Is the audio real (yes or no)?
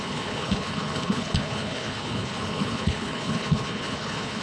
no